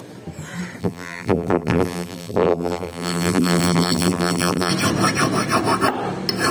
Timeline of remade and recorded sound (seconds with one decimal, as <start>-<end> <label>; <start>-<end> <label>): 0.0-0.8 recorded; 0.8-4.7 remade; 4.7-6.5 recorded